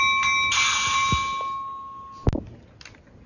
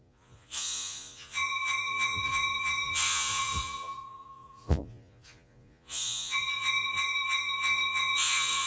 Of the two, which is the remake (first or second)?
second